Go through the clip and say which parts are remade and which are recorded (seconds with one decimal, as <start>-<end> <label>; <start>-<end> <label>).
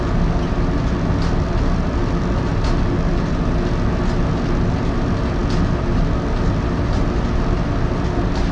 0.0-8.5 recorded